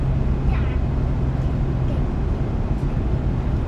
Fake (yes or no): no